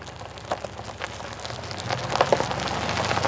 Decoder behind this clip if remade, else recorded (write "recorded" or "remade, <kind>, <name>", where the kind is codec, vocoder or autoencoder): recorded